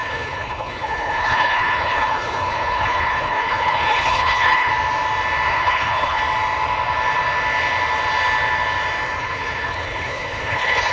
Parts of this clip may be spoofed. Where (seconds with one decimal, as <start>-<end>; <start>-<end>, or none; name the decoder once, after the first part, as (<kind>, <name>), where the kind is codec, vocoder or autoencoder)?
0.0-4.7 (codec, HILCodec); 5.5-6.2; 9.2-10.9